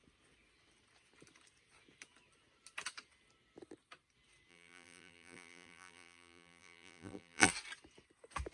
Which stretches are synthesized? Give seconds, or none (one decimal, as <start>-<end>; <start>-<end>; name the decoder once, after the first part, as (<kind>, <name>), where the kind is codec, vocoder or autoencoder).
4.5-7.5 (vocoder, BigVGAN v2)